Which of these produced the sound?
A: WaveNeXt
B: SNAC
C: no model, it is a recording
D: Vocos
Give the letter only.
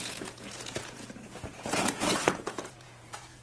D